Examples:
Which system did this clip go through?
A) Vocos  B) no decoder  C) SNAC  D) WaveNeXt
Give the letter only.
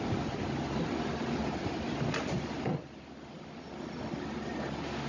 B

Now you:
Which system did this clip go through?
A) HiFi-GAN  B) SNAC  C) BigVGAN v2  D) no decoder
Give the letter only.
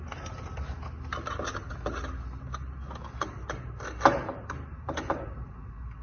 D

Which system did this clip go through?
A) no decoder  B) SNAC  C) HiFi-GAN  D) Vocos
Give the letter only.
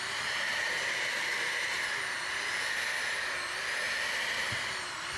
A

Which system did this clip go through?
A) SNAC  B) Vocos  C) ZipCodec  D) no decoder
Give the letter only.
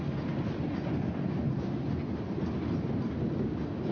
D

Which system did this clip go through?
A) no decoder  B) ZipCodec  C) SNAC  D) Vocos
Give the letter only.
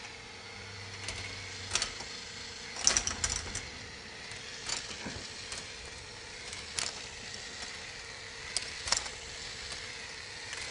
A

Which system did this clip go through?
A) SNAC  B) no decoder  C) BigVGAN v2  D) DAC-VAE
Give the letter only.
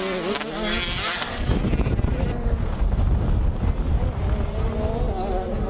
B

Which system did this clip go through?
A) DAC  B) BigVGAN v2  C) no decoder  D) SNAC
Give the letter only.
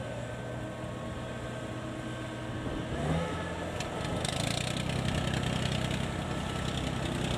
C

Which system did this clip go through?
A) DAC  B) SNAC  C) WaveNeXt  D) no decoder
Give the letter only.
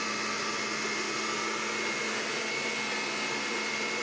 D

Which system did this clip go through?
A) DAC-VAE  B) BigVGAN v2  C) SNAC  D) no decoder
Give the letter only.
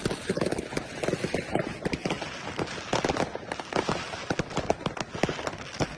D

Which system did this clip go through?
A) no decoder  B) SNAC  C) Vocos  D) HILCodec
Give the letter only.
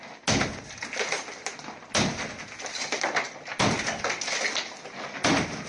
A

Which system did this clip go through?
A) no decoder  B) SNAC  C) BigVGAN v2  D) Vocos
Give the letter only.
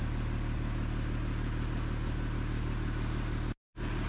A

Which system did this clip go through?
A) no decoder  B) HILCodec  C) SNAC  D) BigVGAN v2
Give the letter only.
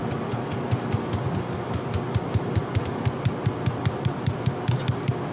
A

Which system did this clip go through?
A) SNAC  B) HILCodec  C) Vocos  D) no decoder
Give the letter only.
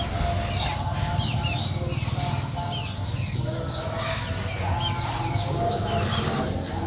D